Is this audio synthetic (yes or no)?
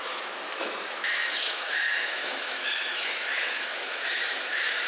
yes